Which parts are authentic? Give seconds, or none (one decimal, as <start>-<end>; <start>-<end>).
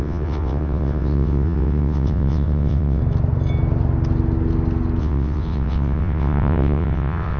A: 3.0-5.0